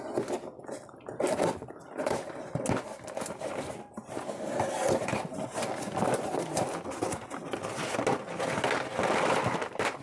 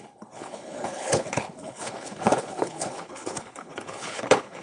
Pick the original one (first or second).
first